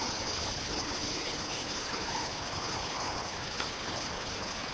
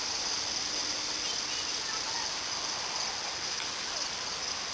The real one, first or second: second